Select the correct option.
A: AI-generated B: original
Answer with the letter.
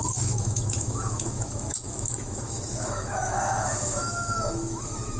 A